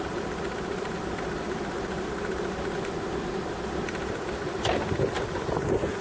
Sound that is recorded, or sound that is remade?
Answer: recorded